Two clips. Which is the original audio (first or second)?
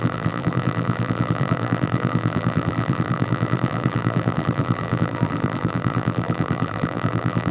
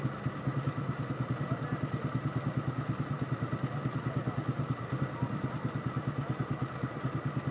second